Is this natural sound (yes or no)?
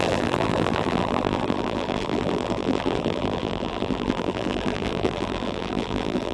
no